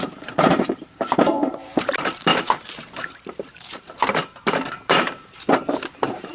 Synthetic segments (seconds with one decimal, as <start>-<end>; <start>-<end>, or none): 0.0-6.3